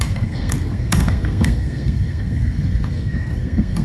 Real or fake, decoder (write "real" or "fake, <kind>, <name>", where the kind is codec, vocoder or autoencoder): fake, codec, SNAC